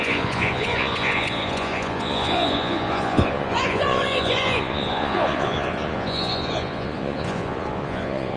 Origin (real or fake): fake